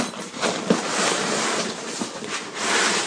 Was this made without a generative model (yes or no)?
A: yes